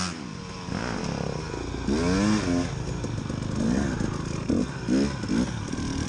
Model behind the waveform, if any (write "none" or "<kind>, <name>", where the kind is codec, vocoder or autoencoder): none